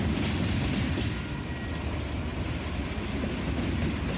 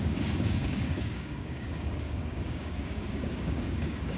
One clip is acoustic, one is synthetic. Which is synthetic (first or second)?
second